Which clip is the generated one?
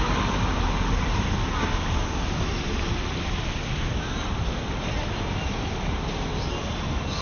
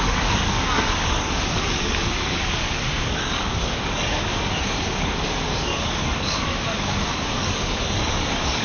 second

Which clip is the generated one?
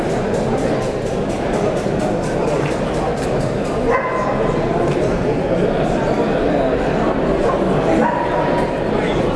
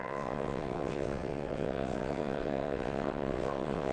second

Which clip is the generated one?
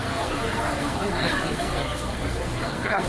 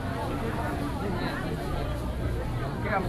first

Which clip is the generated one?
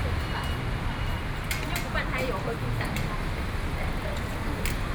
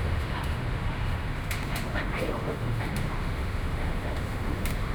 second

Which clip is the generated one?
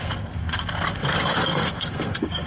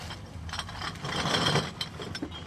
first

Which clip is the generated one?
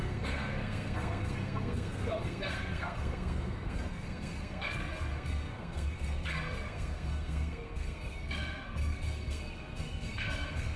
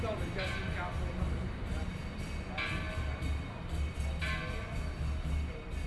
first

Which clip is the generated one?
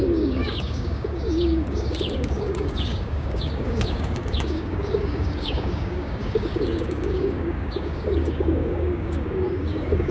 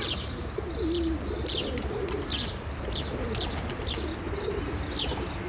first